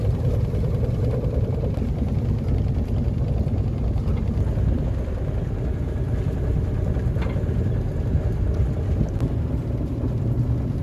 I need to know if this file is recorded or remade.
recorded